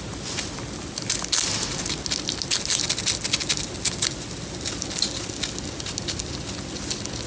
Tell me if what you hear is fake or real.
real